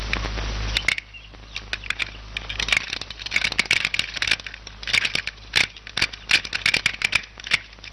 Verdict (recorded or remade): recorded